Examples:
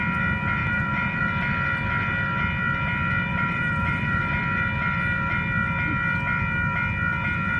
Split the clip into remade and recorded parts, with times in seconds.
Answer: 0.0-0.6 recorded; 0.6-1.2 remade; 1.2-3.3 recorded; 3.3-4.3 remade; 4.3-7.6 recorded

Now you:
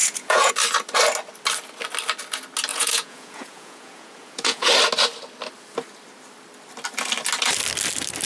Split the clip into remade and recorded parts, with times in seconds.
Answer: 0.0-0.5 remade; 0.5-2.7 recorded; 2.7-4.7 remade; 4.7-8.2 recorded